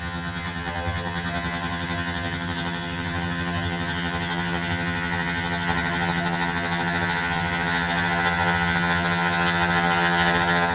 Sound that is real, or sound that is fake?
fake